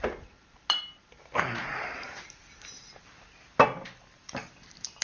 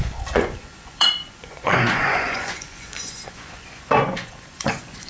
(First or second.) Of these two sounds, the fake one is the second